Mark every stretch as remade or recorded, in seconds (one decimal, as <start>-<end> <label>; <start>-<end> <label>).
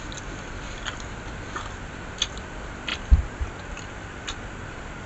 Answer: 0.0-5.1 recorded